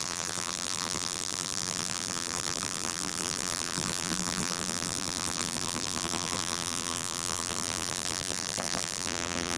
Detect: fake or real fake